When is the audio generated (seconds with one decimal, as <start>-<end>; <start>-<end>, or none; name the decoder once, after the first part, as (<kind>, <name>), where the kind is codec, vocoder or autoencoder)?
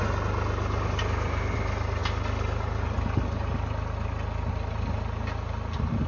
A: none